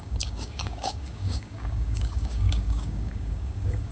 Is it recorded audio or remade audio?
remade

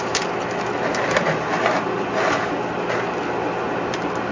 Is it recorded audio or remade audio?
recorded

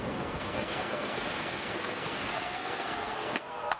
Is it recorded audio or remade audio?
remade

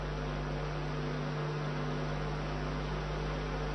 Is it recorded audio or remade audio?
recorded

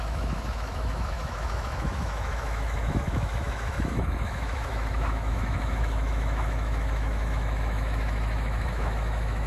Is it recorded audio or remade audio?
remade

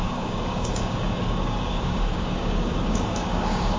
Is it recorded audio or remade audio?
remade